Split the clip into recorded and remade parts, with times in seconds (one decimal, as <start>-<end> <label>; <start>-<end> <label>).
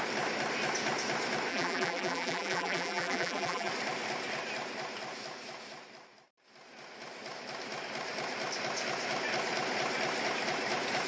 0.0-1.5 recorded; 1.5-3.7 remade; 3.7-11.1 recorded